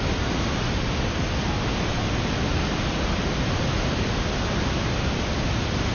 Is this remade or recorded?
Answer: recorded